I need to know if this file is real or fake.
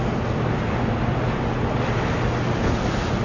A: real